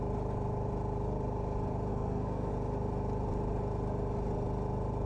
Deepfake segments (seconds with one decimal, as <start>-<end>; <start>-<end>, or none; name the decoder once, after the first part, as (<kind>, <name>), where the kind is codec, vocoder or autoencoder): 1.9-2.5 (codec, SNAC)

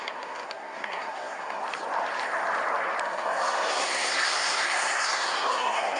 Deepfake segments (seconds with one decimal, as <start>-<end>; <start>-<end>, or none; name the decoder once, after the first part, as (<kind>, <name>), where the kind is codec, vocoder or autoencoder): 0.0-1.6 (codec, SNAC); 3.0-6.0

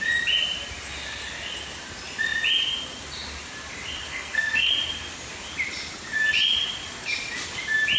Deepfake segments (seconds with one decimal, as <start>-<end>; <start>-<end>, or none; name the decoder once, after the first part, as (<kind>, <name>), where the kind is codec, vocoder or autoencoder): 4.1-4.7 (codec, SNAC)

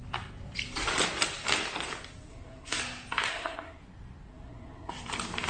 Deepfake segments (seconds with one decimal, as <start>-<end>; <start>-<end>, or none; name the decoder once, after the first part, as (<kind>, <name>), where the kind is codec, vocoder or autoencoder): 2.3-2.8 (codec, SNAC); 3.3-3.8; 4.3-4.9

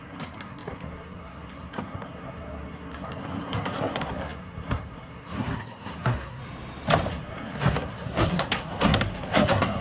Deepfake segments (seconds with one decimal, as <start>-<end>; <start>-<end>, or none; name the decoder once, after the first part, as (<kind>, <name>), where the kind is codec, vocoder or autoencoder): 0.0-6.4 (codec, SNAC); 7.1-9.8

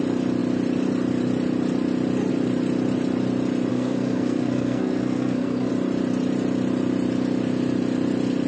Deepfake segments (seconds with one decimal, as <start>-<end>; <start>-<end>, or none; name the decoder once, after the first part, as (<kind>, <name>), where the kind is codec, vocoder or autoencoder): 3.7-5.7 (codec, SNAC)

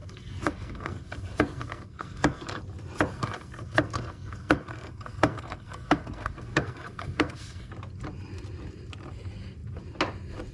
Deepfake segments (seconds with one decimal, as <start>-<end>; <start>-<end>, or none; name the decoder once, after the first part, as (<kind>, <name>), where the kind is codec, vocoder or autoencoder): 0.0-2.6 (codec, SNAC); 3.1-7.7